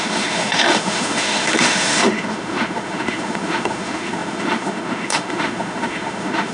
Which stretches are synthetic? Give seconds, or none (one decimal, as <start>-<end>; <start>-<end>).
0.0-6.5